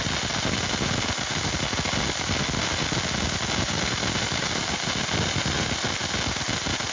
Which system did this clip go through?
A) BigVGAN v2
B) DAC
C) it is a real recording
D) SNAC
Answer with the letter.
C